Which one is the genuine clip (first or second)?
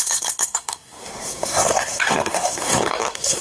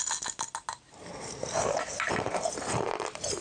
second